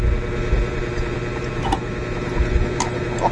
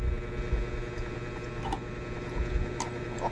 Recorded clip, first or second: second